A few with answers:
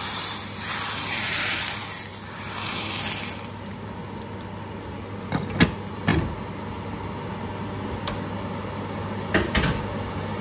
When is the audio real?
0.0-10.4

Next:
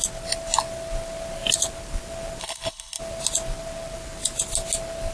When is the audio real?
0.0-2.4; 3.0-5.1

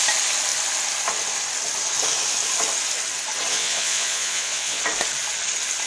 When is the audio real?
0.0-3.5; 4.8-5.9